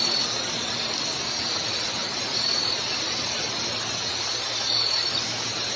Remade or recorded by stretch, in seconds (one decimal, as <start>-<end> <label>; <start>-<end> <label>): 0.0-5.8 recorded